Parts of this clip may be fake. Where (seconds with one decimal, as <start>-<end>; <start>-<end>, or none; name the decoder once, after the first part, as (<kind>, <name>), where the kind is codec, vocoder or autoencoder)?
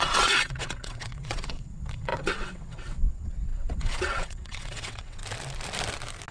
0.0-5.2 (vocoder, WaveNeXt)